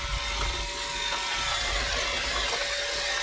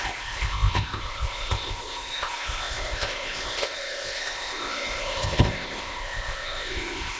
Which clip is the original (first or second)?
first